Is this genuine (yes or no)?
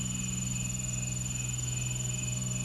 yes